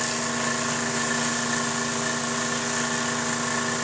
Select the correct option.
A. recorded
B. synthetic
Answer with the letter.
A